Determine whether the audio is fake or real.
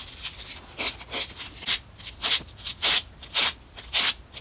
real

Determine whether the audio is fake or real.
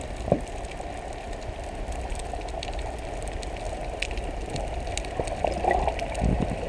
real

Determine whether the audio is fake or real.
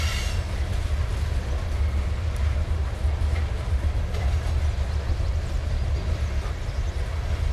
real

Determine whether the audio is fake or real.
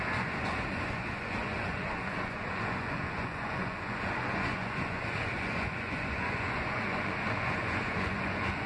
fake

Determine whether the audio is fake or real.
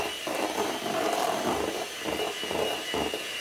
fake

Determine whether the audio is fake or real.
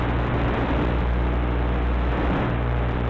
real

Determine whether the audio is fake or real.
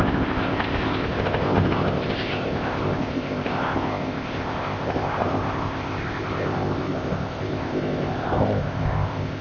fake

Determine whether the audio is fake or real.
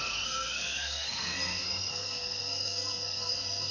fake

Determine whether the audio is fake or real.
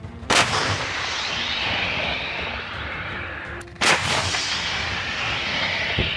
fake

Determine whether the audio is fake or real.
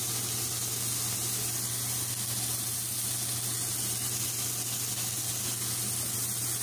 real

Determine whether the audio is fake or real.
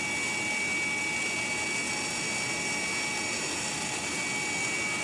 real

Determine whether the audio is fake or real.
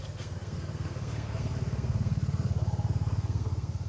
fake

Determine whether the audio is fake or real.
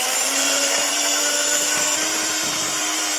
fake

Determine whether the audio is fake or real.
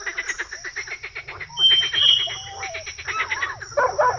real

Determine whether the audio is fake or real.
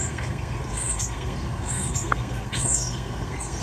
fake